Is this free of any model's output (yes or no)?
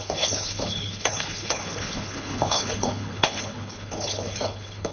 no